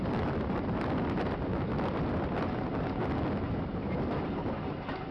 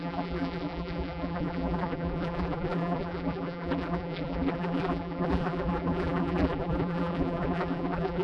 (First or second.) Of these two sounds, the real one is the first